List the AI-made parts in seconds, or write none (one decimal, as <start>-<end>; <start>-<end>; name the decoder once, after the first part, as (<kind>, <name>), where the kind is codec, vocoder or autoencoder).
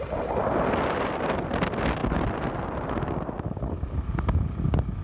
none